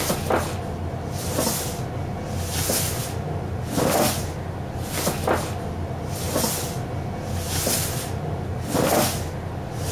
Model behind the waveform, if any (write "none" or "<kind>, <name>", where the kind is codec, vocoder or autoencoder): none